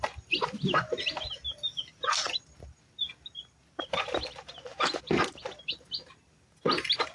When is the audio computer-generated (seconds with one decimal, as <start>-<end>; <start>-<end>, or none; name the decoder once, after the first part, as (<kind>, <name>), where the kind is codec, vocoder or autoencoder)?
none